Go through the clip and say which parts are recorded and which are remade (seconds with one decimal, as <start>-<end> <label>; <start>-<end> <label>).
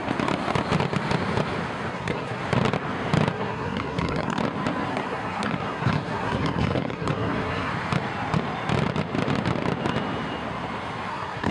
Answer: 0.0-1.9 recorded; 1.9-2.4 remade; 2.4-3.3 recorded; 3.3-4.4 remade; 4.4-4.9 recorded; 4.9-7.7 remade; 7.7-11.1 recorded; 11.1-11.5 remade